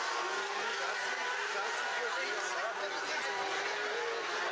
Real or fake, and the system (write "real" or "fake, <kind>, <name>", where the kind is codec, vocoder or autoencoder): real